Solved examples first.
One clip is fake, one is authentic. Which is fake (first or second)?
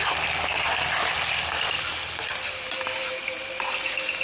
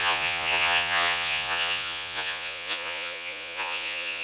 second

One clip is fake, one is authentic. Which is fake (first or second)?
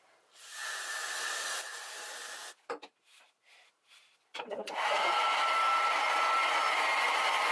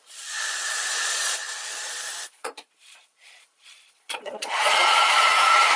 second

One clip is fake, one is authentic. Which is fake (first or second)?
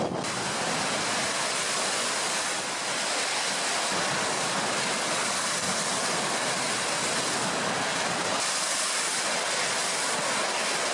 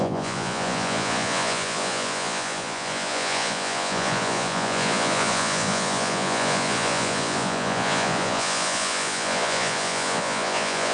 second